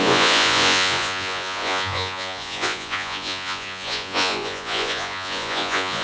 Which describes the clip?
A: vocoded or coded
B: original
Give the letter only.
A